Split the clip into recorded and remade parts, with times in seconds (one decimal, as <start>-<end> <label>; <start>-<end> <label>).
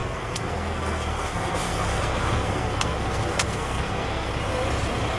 0.0-4.3 remade; 4.3-5.2 recorded